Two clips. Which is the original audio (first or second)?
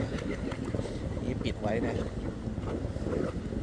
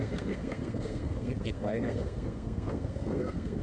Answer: first